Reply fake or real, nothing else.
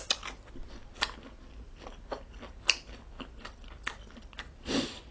real